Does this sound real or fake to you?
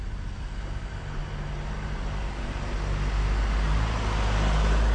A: real